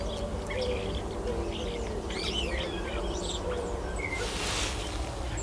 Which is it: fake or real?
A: real